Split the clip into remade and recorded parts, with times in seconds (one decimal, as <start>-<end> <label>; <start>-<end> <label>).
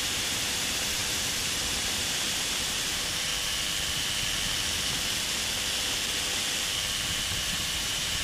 0.0-3.3 remade; 3.3-7.3 recorded; 7.3-8.2 remade